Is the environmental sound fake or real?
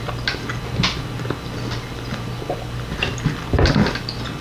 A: real